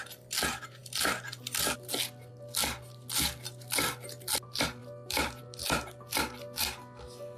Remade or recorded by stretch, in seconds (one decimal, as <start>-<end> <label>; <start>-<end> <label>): 0.0-7.4 recorded